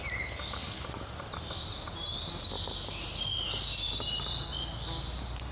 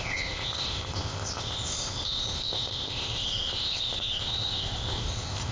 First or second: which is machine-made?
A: second